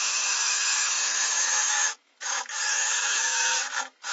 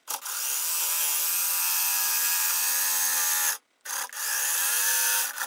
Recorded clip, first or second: second